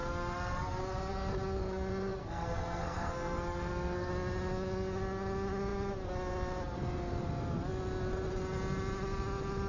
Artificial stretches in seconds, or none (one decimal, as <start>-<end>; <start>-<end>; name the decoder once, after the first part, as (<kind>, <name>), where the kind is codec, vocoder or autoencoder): 0.0-0.8 (codec, SNAC); 2.2-4.1